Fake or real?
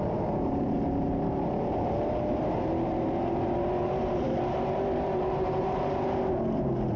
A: fake